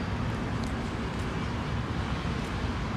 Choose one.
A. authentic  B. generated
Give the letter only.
A